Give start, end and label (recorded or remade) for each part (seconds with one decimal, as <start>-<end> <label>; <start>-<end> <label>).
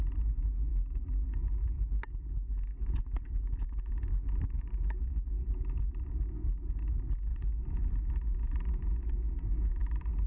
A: 0.0-7.3 recorded; 7.3-9.8 remade; 9.8-10.3 recorded